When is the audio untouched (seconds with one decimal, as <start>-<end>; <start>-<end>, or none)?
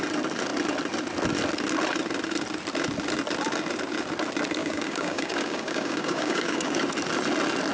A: 0.0-4.6; 6.8-7.7